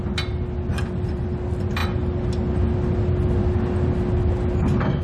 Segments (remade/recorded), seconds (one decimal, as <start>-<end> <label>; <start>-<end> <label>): 0.0-0.7 recorded; 0.7-1.2 remade; 1.2-5.0 recorded